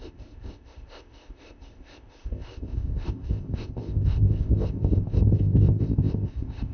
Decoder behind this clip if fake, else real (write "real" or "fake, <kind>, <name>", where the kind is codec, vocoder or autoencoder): fake, codec, ZipCodec